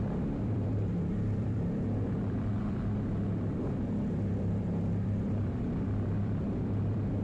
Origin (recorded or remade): remade